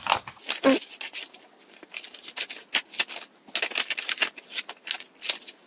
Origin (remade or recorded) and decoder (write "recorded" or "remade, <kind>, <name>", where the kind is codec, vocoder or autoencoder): recorded